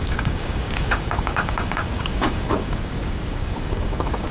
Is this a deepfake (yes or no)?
yes